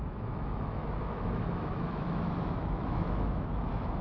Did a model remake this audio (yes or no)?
yes